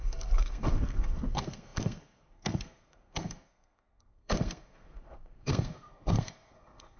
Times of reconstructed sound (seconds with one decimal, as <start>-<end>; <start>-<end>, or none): 0.0-7.0